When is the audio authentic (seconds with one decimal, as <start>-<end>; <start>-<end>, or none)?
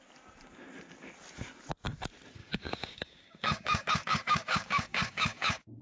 0.0-2.4